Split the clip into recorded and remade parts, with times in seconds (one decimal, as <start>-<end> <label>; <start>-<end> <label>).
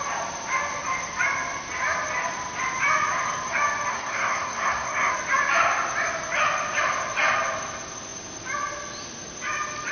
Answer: 0.0-3.9 recorded; 3.9-5.1 remade; 5.1-9.9 recorded